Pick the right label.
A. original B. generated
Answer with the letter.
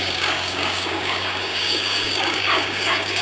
B